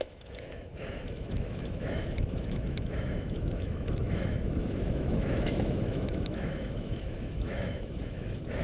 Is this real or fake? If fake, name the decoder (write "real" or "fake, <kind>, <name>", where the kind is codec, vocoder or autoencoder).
fake, autoencoder, DAC-VAE